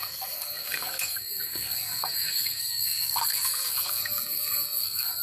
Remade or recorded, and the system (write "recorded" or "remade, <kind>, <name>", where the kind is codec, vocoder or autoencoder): remade, codec, SNAC